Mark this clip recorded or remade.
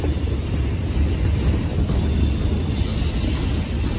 recorded